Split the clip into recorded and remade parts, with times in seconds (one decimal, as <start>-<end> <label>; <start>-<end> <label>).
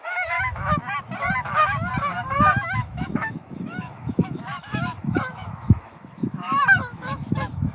0.0-0.8 remade; 0.8-1.4 recorded; 1.4-1.9 remade; 1.9-2.4 recorded; 2.4-7.7 remade